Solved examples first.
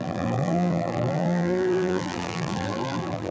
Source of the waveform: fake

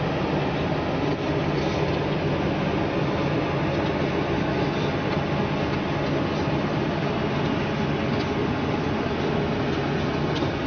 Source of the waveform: real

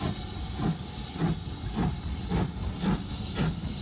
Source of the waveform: real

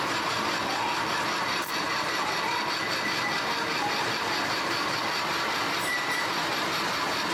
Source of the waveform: fake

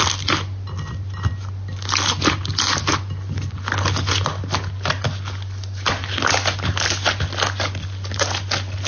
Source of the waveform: real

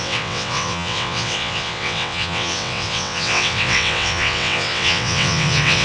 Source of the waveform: fake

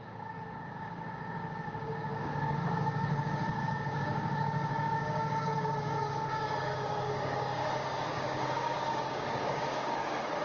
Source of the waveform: fake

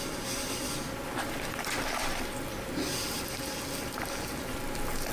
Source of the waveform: real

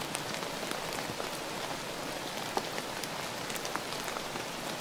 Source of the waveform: real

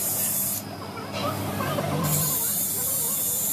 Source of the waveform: fake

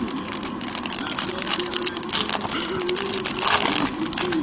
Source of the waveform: real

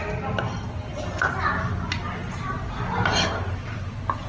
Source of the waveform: real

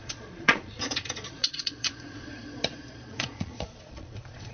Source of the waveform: fake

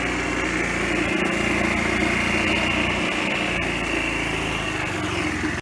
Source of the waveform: real